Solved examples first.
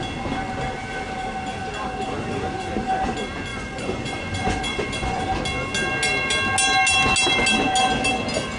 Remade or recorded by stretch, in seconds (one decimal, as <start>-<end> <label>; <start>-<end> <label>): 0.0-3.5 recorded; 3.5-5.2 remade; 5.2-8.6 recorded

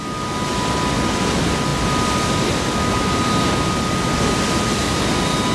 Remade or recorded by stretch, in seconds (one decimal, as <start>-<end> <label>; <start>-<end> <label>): 0.0-5.5 recorded

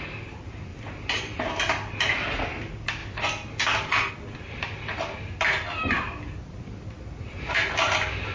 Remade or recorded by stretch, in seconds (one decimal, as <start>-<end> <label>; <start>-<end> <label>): 0.0-8.3 recorded

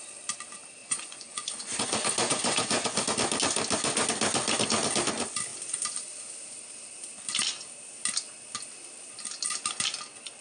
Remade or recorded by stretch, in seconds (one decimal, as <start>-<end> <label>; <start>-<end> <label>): 0.0-0.8 recorded; 0.8-3.0 remade; 3.0-10.4 recorded

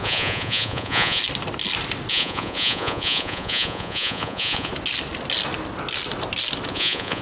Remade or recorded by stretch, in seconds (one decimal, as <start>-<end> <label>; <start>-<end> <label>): 0.0-1.2 remade; 1.2-2.1 recorded; 2.1-4.7 remade; 4.7-6.7 recorded; 6.7-7.2 remade

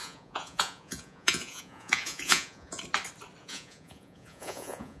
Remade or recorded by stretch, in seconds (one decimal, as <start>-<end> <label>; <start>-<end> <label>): 0.0-2.8 remade; 2.8-3.4 recorded; 3.4-5.0 remade